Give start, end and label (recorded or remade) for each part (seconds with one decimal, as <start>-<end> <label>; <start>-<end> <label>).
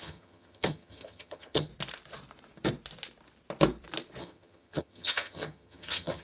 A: 0.0-1.7 remade; 1.7-4.2 recorded; 4.2-6.2 remade